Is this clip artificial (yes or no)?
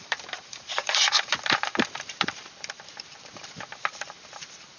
yes